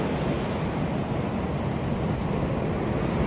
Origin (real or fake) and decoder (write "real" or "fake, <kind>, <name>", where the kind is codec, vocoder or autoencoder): real